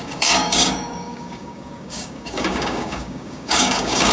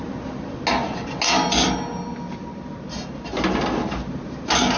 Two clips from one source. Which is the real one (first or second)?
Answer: second